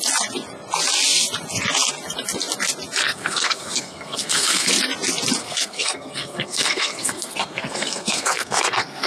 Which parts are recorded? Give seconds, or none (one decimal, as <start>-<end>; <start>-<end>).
0.0-3.0; 4.7-5.4